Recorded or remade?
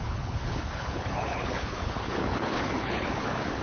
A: remade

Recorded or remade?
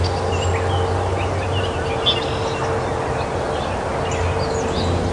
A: recorded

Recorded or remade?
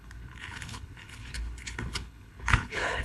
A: remade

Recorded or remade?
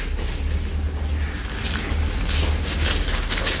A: recorded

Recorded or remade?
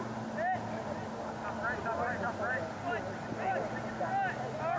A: recorded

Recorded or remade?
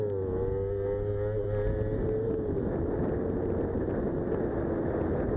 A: recorded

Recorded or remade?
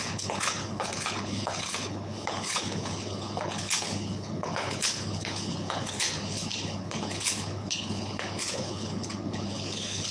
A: remade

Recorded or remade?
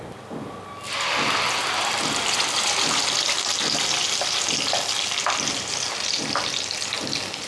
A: recorded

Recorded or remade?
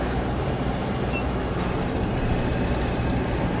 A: recorded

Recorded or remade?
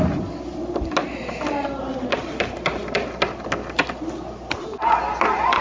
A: recorded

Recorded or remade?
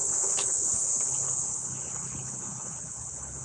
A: remade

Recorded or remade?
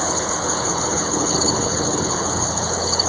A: remade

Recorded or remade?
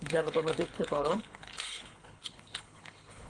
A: remade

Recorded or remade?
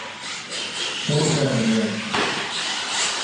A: recorded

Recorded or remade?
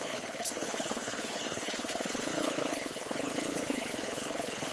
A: remade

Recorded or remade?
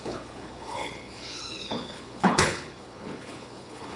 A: remade